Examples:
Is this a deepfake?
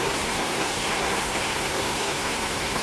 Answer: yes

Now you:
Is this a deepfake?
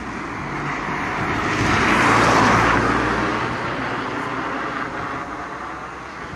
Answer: no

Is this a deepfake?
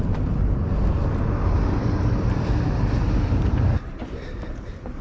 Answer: no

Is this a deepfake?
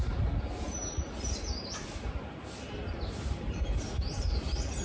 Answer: no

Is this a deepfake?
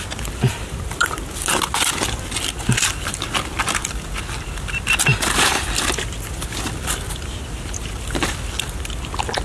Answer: no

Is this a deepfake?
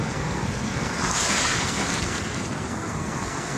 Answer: yes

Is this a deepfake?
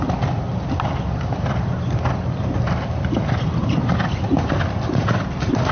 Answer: no